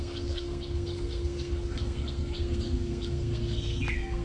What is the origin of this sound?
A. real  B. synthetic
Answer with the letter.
B